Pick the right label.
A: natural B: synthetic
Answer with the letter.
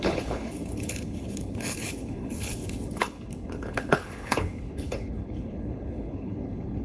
B